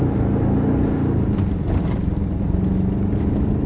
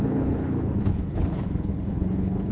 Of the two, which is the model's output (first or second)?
second